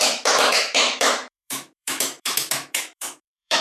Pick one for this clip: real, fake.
fake